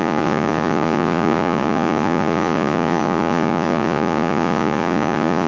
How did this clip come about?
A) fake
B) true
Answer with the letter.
A